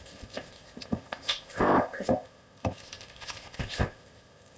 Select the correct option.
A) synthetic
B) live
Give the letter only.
A